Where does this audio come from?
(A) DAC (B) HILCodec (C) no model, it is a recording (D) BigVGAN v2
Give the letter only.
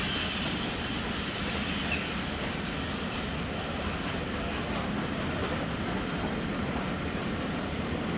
C